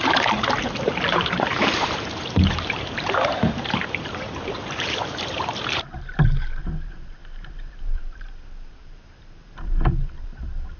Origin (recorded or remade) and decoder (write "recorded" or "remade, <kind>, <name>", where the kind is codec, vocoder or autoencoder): remade, vocoder, BigVGAN v2